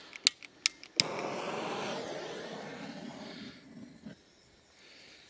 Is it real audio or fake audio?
real